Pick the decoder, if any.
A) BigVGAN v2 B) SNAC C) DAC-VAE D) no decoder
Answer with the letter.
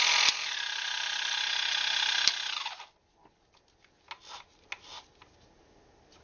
D